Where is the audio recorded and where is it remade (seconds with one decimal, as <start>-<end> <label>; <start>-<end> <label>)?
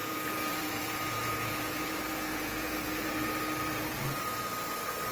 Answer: 0.0-3.1 remade; 3.1-5.1 recorded